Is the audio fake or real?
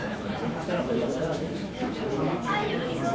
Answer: fake